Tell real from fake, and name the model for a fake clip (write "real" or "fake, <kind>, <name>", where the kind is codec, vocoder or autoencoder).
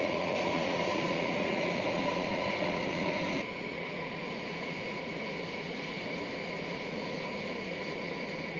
fake, vocoder, Vocos